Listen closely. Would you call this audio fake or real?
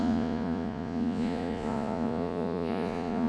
fake